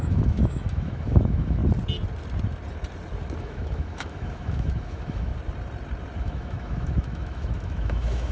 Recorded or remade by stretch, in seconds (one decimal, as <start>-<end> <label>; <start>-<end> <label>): 0.0-1.6 remade; 1.6-3.4 recorded; 3.4-5.3 remade; 5.3-6.2 recorded; 6.2-8.3 remade